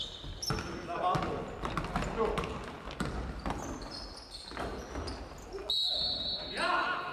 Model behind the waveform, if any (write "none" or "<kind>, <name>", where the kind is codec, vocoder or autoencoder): none